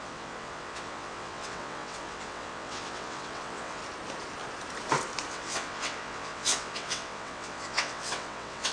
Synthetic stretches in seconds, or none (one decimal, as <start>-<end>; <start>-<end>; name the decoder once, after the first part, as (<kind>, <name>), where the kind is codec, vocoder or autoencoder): 0.0-3.8 (vocoder, WaveNeXt); 5.3-8.7